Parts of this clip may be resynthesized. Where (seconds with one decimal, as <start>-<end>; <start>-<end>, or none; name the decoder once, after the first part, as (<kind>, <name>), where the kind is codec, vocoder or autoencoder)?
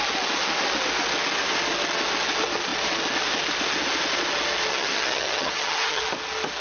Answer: 4.7-6.0 (vocoder, HiFi-GAN)